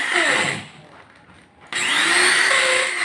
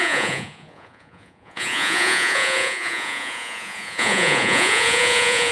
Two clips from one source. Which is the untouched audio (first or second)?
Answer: first